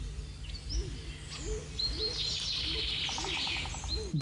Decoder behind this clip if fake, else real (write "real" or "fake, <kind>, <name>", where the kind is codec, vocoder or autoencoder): real